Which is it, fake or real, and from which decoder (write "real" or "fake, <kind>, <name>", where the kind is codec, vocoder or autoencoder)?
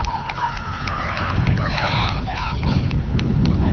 fake, codec, HILCodec